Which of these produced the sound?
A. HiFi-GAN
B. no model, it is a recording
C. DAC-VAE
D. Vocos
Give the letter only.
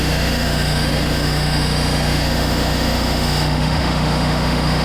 C